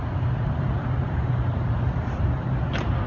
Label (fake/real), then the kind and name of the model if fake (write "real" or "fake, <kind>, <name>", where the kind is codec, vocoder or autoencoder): real